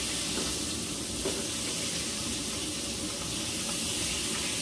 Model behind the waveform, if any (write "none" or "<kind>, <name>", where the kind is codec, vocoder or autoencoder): none